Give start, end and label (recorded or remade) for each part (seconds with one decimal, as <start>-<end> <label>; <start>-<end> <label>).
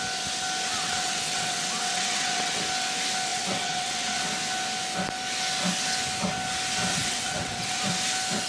0.0-0.7 recorded; 0.7-2.6 remade; 2.6-3.3 recorded; 3.3-4.2 remade; 4.2-6.9 recorded; 6.9-7.8 remade; 7.8-8.5 recorded